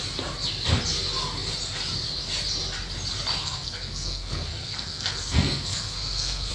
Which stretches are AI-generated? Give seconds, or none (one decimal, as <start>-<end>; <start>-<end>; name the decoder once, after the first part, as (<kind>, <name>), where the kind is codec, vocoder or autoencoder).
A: 3.4-6.5 (codec, SNAC)